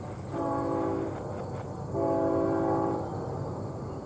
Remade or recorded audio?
recorded